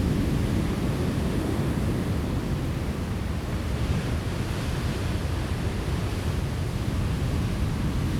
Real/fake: real